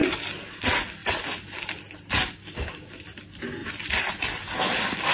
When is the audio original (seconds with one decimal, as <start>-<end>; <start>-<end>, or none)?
0.0-2.4; 2.9-5.1